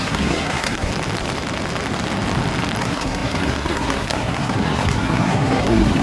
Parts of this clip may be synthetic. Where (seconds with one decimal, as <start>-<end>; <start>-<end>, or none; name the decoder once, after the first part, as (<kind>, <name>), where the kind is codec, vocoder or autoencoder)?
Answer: 0.0-0.9 (codec, SNAC); 2.8-6.0

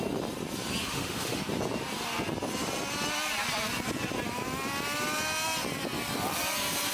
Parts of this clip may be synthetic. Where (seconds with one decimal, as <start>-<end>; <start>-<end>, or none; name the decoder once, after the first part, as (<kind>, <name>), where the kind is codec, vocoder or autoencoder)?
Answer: 0.8-1.4 (autoencoder, DAC-VAE)

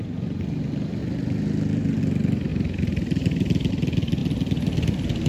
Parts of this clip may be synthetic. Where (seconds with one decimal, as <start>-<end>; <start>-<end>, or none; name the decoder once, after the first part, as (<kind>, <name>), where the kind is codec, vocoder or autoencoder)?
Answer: 0.0-1.0 (vocoder, BigVGAN v2); 2.0-2.5; 3.7-5.3

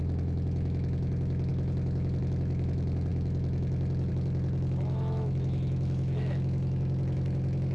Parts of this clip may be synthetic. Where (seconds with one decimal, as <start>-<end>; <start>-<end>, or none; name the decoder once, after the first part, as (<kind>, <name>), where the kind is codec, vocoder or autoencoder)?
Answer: 0.0-7.7 (autoencoder, DAC-VAE)